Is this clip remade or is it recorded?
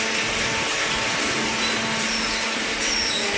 recorded